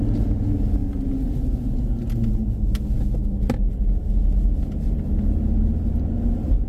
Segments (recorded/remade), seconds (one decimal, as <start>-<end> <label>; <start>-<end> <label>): 0.0-6.7 recorded